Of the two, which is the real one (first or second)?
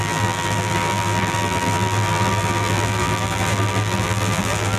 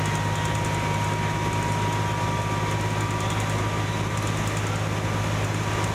second